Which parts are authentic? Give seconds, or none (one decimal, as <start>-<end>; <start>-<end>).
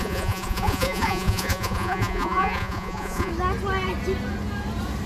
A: 3.3-5.1